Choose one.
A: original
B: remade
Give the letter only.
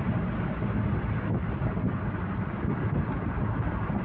A